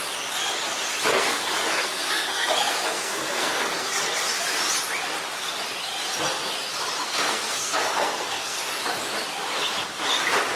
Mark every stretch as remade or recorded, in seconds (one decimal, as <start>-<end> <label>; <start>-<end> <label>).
0.0-1.1 recorded; 1.1-3.9 remade; 3.9-7.0 recorded; 7.0-8.6 remade; 8.6-10.6 recorded